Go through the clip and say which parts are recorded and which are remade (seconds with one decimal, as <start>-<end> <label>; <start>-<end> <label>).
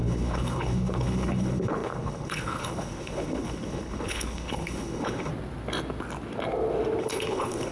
0.0-5.3 remade; 5.3-7.0 recorded; 7.0-7.7 remade